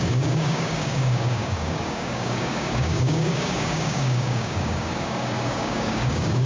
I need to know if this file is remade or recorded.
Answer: remade